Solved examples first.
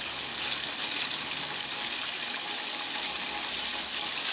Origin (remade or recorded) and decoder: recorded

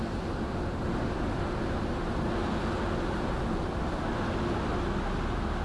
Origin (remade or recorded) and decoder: recorded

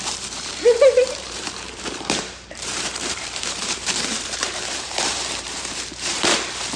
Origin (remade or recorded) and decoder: remade, vocoder, BigVGAN v2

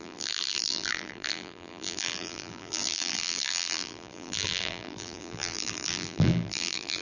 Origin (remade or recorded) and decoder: remade, vocoder, BigVGAN v2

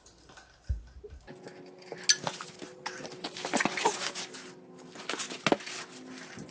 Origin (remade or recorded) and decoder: recorded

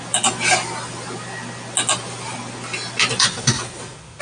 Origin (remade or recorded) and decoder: recorded